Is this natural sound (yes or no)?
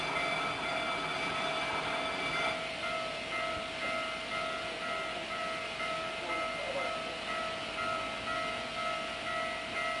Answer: yes